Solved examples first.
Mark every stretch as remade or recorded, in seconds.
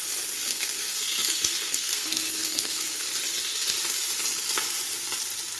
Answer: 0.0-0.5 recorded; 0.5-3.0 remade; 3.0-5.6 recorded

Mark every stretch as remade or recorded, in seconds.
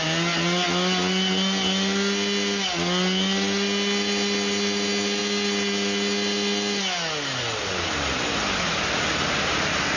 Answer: 0.0-10.0 recorded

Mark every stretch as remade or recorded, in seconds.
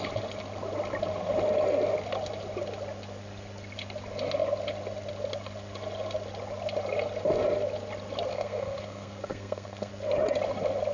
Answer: 0.0-8.3 recorded; 8.3-9.9 remade; 9.9-10.9 recorded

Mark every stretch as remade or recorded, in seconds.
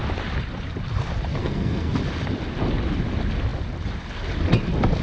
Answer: 0.0-1.4 recorded; 1.4-2.0 remade; 2.0-5.0 recorded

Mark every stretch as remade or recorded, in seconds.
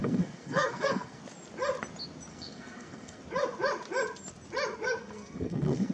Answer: 0.0-1.2 remade; 1.2-2.3 recorded; 2.3-3.2 remade; 3.2-5.0 recorded; 5.0-5.9 remade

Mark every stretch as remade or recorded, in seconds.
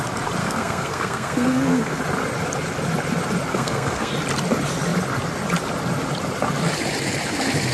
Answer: 0.0-0.4 recorded; 0.4-2.0 remade; 2.0-3.5 recorded; 3.5-4.1 remade; 4.1-7.7 recorded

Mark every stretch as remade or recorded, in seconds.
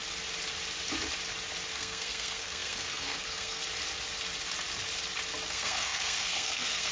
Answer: 0.0-1.7 recorded; 1.7-3.6 remade; 3.6-5.5 recorded; 5.5-6.9 remade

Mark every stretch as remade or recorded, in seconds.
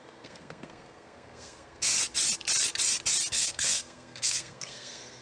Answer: 0.0-1.9 remade; 1.9-3.3 recorded; 3.3-5.2 remade